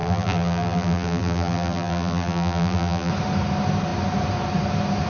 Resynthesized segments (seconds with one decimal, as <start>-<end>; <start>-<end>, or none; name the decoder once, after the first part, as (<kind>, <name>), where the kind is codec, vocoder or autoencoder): 0.0-3.1 (vocoder, BigVGAN v2)